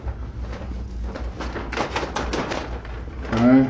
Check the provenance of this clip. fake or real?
real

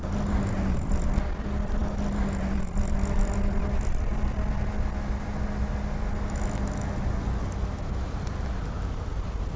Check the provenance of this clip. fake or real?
real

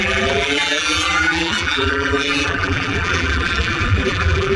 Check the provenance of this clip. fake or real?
fake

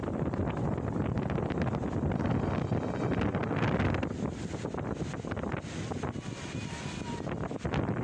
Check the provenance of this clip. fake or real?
real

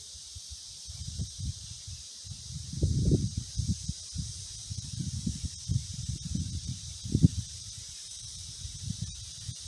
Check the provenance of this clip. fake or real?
fake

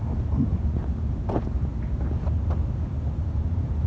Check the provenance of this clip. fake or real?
real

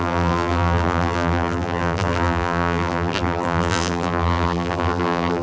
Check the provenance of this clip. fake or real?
fake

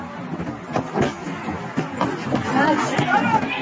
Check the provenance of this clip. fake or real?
real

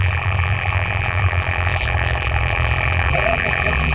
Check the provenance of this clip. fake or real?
fake